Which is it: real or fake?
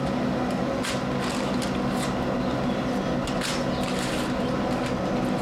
real